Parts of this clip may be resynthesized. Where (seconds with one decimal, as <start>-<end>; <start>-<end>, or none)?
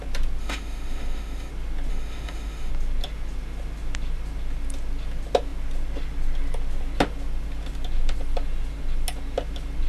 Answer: 0.4-1.5; 1.9-2.7